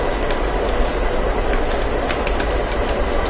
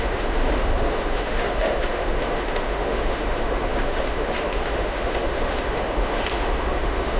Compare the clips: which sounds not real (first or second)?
second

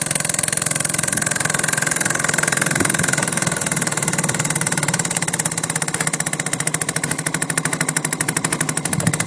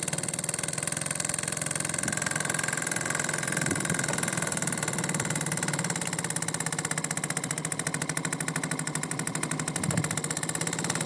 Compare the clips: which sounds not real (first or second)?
first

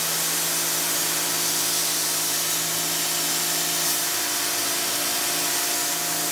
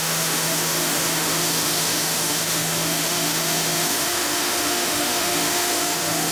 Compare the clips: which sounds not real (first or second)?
second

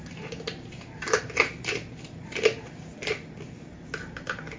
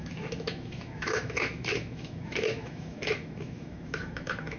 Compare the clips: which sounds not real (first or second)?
second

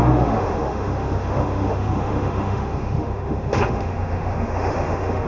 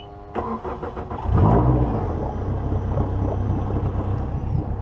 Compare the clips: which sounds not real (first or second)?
first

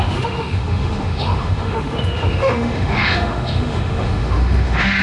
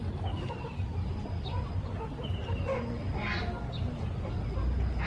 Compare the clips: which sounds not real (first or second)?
first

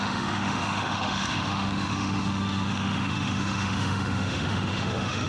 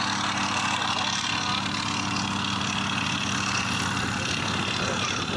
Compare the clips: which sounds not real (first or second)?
first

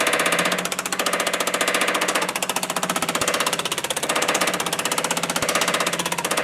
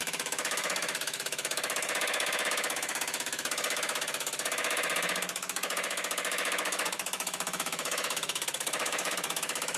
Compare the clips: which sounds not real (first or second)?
second